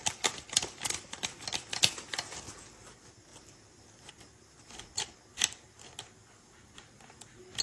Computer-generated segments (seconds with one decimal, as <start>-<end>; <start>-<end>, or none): none